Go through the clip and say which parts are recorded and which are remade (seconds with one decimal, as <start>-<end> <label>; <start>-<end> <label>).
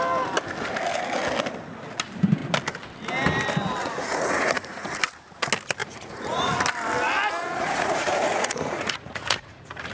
0.0-3.8 recorded; 3.8-4.9 remade; 4.9-5.8 recorded; 5.8-6.6 remade; 6.6-7.4 recorded; 7.4-9.9 remade